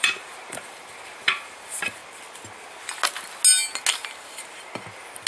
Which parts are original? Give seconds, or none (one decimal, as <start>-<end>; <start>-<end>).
2.0-5.3